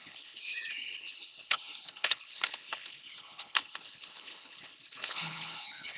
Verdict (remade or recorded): remade